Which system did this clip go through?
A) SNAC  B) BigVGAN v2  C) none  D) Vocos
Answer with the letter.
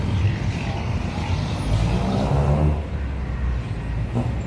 C